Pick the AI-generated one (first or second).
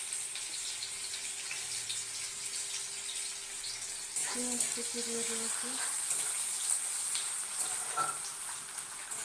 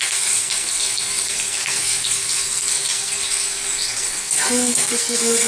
second